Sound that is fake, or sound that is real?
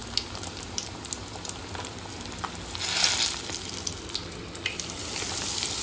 real